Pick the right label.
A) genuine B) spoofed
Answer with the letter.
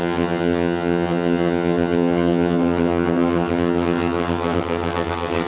B